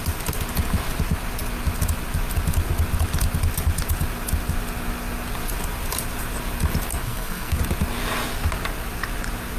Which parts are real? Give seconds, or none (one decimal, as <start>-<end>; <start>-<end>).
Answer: 0.0-7.0; 7.6-9.6